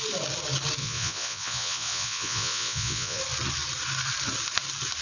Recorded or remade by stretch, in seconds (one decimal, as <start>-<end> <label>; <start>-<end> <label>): 0.0-0.8 recorded; 0.8-3.2 remade; 3.2-5.0 recorded

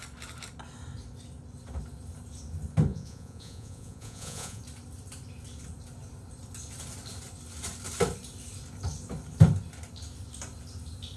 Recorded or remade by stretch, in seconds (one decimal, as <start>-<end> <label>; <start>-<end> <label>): 0.0-2.9 recorded; 2.9-4.6 remade; 4.6-11.2 recorded